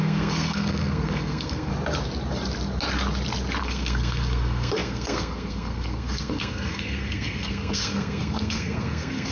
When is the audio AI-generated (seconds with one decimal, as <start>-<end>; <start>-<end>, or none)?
0.0-1.7; 3.6-9.3